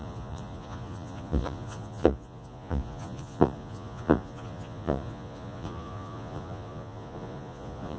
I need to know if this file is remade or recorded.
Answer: remade